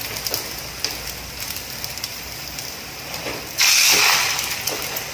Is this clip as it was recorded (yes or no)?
yes